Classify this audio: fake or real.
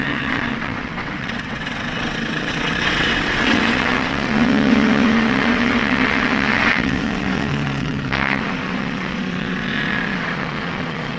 fake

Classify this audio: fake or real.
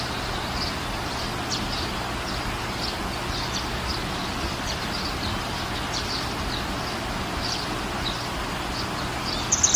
real